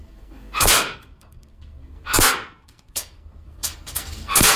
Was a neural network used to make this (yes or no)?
yes